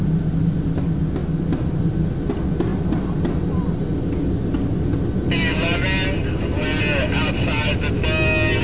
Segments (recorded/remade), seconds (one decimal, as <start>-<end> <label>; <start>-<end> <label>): 0.0-8.6 recorded